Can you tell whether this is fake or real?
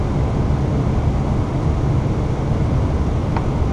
real